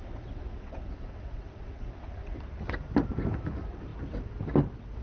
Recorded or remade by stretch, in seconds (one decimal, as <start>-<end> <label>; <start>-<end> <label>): 0.0-2.4 remade; 2.4-5.0 recorded